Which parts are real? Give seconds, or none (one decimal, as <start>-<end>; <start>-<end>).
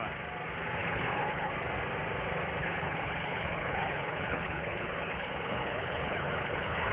0.0-0.8; 1.5-2.6